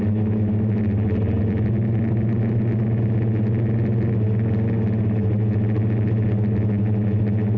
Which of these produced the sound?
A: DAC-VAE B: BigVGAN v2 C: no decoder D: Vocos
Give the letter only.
C